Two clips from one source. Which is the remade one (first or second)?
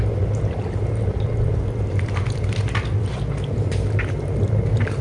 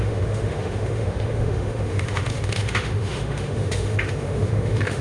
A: second